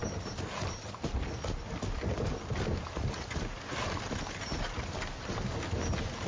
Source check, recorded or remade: recorded